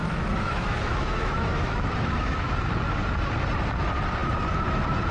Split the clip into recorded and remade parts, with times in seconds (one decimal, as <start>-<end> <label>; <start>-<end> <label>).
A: 0.0-2.5 remade; 2.5-5.1 recorded